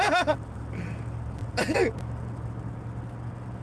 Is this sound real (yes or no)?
yes